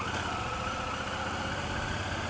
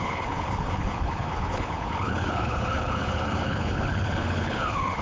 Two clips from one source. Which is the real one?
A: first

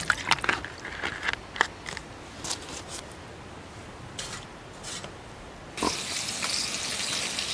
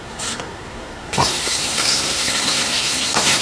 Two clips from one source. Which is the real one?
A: first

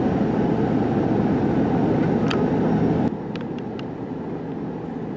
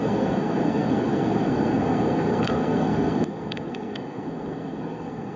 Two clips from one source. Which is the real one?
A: first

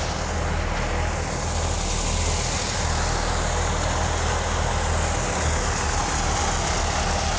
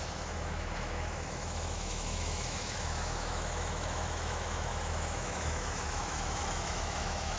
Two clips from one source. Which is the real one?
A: first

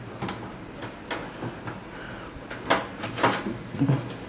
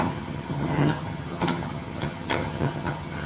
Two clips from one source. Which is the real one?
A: first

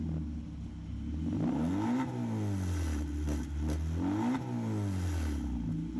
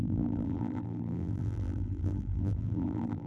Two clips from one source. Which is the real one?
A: first